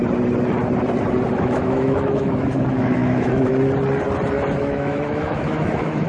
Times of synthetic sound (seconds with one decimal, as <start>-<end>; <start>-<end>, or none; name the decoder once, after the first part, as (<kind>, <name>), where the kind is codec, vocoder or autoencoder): 1.3-3.5 (autoencoder, DAC-VAE); 4.6-6.1